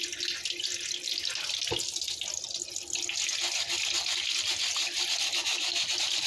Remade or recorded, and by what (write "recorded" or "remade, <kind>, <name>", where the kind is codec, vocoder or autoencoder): recorded